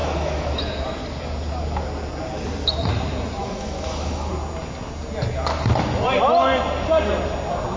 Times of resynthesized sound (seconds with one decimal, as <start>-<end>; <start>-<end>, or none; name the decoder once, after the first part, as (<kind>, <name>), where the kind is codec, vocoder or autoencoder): 0.0-0.6 (autoencoder, DAC-VAE); 3.4-4.3